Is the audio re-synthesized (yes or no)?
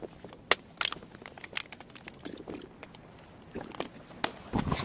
no